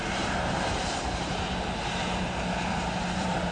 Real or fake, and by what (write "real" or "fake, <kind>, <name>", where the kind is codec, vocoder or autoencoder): fake, vocoder, BigVGAN v2